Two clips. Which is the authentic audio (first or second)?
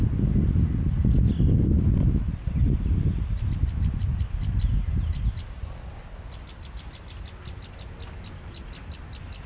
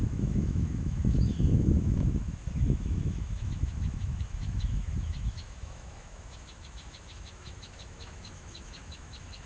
first